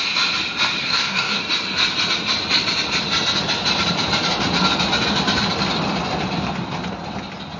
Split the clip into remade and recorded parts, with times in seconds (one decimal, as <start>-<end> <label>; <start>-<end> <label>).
0.0-0.8 recorded; 0.8-1.4 remade; 1.4-7.6 recorded